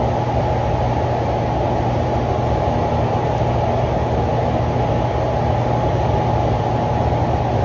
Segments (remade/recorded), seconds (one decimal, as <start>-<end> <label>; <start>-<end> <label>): 0.0-7.6 recorded